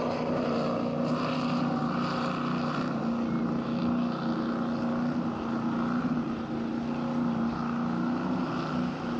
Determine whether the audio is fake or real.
real